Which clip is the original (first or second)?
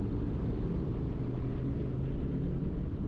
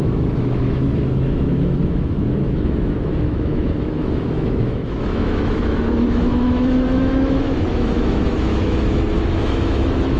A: first